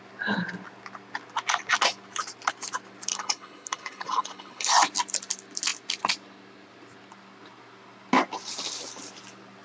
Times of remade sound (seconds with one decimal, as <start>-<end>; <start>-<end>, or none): 3.1-4.7